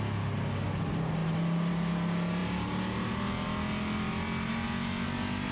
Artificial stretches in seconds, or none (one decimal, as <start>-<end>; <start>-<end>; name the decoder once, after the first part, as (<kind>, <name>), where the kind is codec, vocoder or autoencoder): none